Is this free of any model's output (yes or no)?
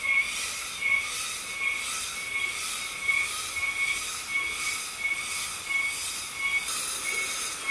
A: yes